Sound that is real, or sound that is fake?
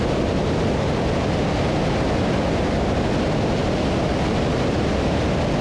real